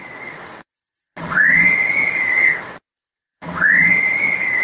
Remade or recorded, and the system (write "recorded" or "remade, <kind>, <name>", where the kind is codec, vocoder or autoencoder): remade, vocoder, WaveNeXt